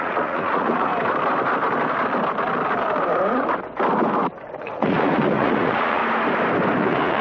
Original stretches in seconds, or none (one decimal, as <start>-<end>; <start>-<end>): 0.9-4.6; 6.0-6.8